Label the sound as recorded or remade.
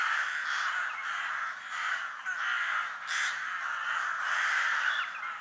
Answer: recorded